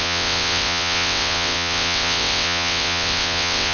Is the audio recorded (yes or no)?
no